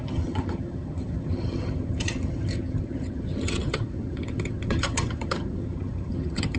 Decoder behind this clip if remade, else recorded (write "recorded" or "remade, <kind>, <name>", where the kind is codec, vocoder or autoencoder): remade, vocoder, HiFi-GAN